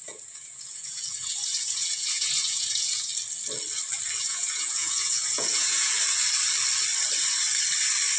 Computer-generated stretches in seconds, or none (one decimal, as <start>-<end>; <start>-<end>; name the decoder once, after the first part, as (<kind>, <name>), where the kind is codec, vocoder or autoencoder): 0.0-3.1 (vocoder, Vocos); 4.2-5.9